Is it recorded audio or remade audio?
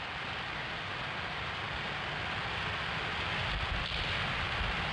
recorded